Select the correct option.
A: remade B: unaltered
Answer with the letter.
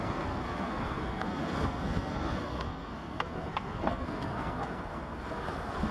A